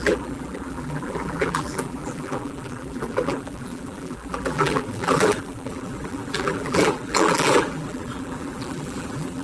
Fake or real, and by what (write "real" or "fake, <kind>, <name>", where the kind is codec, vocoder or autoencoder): fake, vocoder, BigVGAN v2